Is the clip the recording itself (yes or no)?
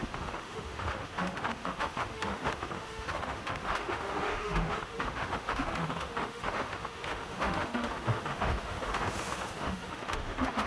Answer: no